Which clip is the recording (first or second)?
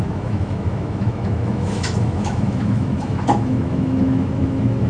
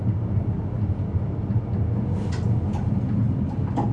second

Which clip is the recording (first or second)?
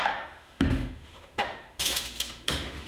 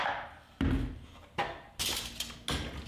second